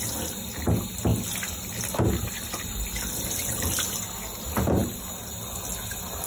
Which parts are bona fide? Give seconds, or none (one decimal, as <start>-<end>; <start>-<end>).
0.0-6.3